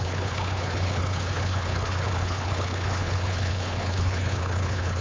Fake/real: fake